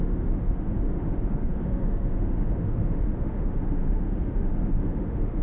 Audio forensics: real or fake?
fake